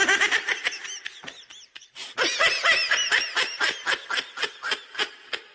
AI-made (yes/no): no